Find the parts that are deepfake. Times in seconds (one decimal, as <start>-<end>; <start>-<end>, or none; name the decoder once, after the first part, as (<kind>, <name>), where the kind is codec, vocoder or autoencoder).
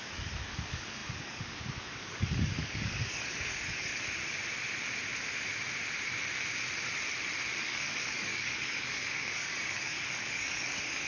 0.0-3.9 (codec, DAC); 7.6-11.1